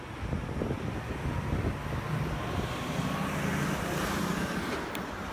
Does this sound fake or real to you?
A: real